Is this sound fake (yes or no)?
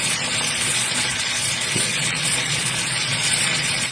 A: yes